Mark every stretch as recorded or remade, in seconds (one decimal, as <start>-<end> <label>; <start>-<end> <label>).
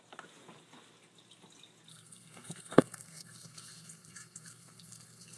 0.0-1.9 recorded; 1.9-5.4 remade